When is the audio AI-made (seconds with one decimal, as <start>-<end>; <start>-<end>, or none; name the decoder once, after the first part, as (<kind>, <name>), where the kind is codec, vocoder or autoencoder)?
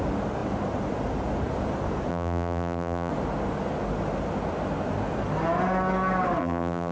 2.1-3.1 (vocoder, BigVGAN v2); 6.4-6.9